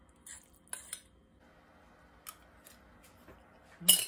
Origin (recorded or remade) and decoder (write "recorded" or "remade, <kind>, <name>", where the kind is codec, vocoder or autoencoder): recorded